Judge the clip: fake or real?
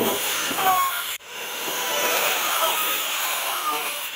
fake